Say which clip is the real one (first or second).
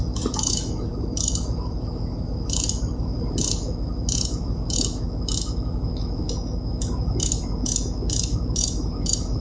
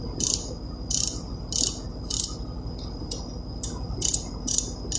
second